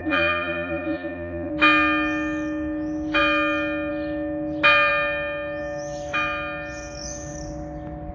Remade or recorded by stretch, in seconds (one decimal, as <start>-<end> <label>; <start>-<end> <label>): 0.0-1.5 remade; 1.5-8.1 recorded